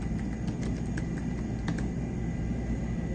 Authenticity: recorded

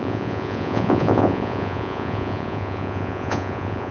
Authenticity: remade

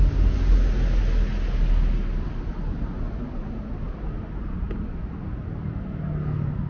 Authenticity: recorded